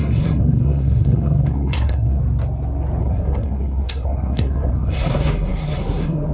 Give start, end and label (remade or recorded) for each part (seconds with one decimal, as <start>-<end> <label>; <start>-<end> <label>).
0.0-2.2 remade; 2.2-3.0 recorded; 3.0-6.3 remade